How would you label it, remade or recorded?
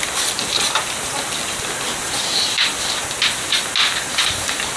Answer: recorded